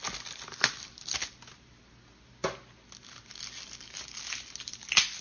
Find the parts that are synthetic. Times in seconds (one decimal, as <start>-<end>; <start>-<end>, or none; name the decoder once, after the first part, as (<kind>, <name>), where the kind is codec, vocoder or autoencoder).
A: none